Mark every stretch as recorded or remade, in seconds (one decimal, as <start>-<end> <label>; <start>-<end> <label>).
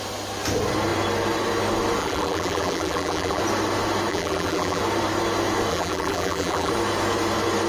0.0-2.0 recorded; 2.0-3.4 remade; 3.4-4.1 recorded; 4.1-4.8 remade; 4.8-5.7 recorded; 5.7-6.7 remade; 6.7-7.7 recorded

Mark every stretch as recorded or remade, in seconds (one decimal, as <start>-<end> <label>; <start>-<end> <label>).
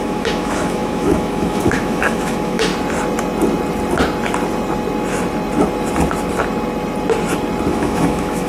0.0-2.7 remade; 2.7-7.7 recorded; 7.7-8.5 remade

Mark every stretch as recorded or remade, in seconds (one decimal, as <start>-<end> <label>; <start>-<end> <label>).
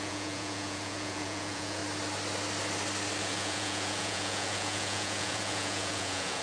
0.0-1.8 remade; 1.8-3.2 recorded; 3.2-6.4 remade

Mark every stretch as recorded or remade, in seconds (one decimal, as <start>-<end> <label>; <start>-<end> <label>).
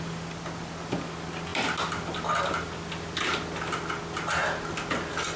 0.0-5.4 recorded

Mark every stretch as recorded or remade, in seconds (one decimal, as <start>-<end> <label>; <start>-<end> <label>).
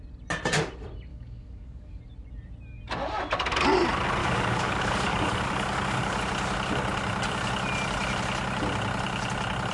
0.0-1.1 recorded; 1.1-2.0 remade; 2.0-4.2 recorded; 4.2-6.2 remade; 6.2-9.7 recorded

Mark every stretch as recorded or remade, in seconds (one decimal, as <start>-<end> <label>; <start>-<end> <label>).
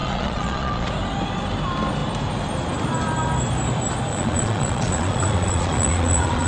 0.0-0.9 remade; 0.9-4.1 recorded; 4.1-6.5 remade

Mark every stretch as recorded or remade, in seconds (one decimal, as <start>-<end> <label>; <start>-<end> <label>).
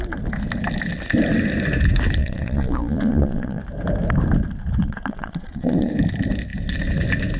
0.0-2.2 recorded; 2.2-3.6 remade; 3.6-4.8 recorded; 4.8-5.9 remade; 5.9-7.4 recorded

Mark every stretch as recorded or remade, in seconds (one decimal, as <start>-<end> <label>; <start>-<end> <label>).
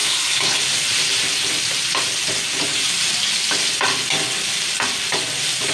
0.0-0.6 remade; 0.6-5.7 recorded